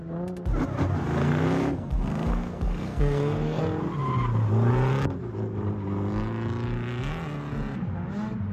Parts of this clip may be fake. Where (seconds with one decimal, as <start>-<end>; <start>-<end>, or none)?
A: 1.2-3.6